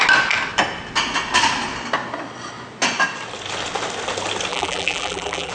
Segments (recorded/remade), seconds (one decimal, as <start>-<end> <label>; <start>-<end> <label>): 0.0-4.5 recorded; 4.5-5.5 remade

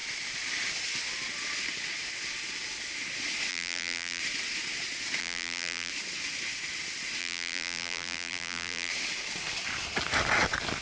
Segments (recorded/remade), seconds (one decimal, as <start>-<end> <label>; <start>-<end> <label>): 0.0-3.5 recorded; 3.5-4.2 remade; 4.2-5.2 recorded; 5.2-5.9 remade; 5.9-7.2 recorded; 7.2-8.9 remade; 8.9-10.8 recorded

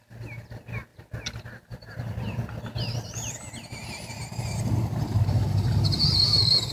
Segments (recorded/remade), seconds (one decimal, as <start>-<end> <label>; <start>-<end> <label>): 0.0-6.7 recorded

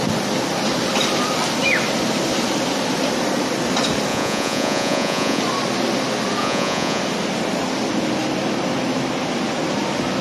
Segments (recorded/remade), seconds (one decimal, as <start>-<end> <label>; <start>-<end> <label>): 0.0-4.1 recorded; 4.1-5.4 remade; 5.4-6.4 recorded; 6.4-7.0 remade; 7.0-10.2 recorded

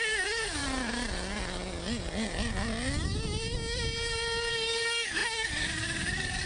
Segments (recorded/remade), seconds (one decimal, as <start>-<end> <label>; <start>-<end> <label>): 0.0-0.6 remade; 0.6-4.5 recorded; 4.5-6.5 remade

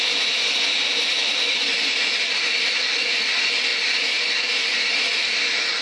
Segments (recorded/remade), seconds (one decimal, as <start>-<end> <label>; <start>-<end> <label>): 0.0-1.5 recorded; 1.5-3.0 remade; 3.0-3.7 recorded; 3.7-4.3 remade; 4.3-5.8 recorded

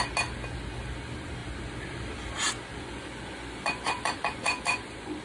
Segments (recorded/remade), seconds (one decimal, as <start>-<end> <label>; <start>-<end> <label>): 0.0-2.7 recorded; 2.7-5.2 remade